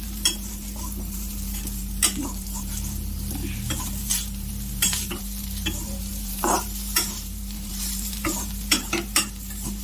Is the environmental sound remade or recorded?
remade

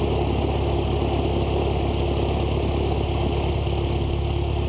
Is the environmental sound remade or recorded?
recorded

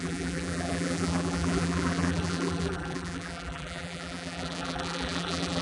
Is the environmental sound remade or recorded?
remade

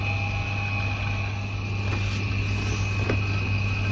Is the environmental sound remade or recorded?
recorded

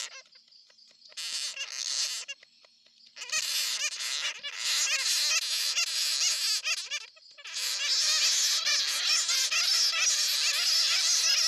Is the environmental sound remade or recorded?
recorded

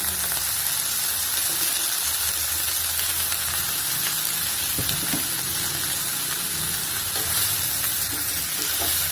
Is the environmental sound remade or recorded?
recorded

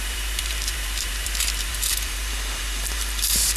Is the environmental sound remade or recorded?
remade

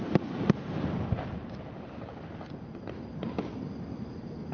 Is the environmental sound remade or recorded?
recorded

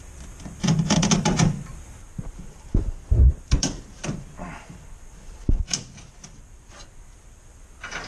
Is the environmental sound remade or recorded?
remade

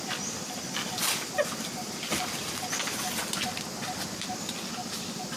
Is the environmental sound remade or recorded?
recorded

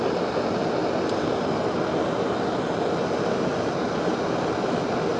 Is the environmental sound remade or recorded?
recorded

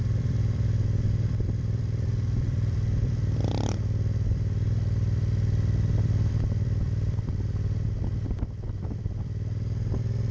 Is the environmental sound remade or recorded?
remade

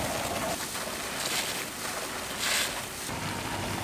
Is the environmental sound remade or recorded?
recorded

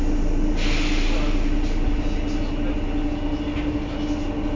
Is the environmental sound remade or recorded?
recorded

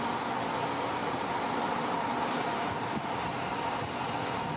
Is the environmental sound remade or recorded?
remade